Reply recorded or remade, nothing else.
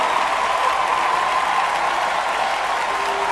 recorded